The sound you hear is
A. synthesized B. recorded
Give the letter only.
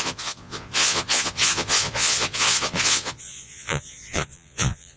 A